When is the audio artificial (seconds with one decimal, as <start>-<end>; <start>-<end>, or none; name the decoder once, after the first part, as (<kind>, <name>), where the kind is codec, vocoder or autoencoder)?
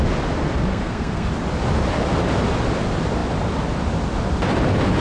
0.7-1.3 (codec, SNAC)